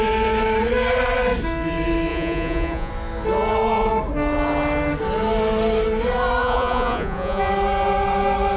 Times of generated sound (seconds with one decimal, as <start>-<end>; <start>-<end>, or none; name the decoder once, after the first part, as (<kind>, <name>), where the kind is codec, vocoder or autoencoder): 2.1-2.9 (vocoder, Vocos); 6.4-7.5